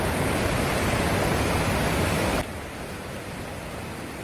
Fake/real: real